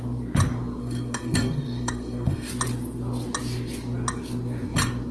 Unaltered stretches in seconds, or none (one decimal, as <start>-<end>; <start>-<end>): 0.0-0.8; 2.5-5.1